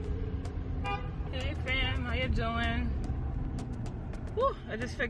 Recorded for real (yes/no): yes